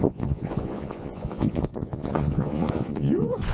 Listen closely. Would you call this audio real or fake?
fake